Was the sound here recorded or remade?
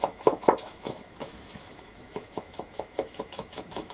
remade